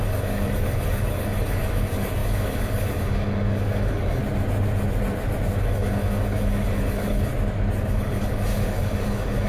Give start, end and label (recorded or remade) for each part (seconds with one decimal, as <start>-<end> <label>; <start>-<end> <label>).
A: 0.0-4.2 remade; 4.2-5.6 recorded; 5.6-7.3 remade; 7.3-7.9 recorded; 7.9-9.5 remade